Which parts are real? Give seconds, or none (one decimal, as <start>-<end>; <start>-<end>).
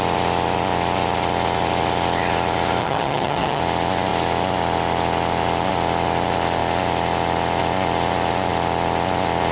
0.0-2.8; 3.6-9.5